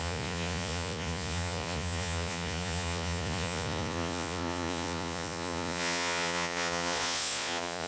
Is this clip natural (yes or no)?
no